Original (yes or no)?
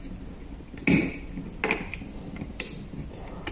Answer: yes